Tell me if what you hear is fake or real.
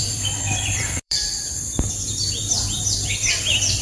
fake